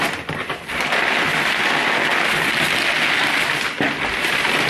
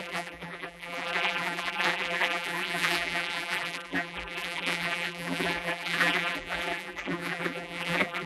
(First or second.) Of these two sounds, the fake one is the second